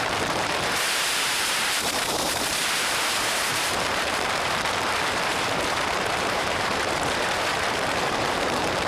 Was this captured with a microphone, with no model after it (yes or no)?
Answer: no